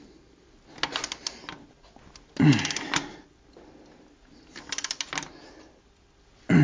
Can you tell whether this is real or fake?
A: real